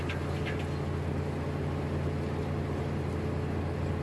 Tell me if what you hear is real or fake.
real